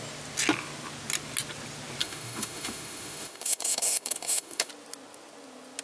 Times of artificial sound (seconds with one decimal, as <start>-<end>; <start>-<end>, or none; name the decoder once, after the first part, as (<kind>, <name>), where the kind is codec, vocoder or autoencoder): 2.0-4.7 (autoencoder, DAC-VAE)